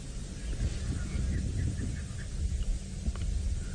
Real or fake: real